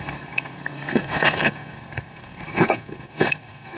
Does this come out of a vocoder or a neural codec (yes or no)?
yes